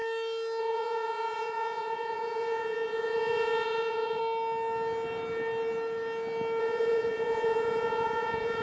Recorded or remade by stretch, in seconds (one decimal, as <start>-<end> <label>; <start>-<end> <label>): 0.0-0.6 recorded; 0.6-4.2 remade; 4.2-6.6 recorded; 6.6-8.6 remade